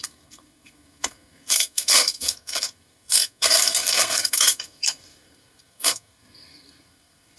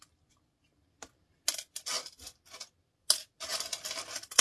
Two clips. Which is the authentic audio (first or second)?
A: second